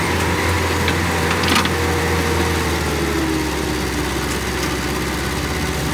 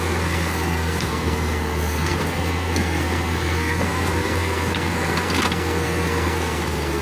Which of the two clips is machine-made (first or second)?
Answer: second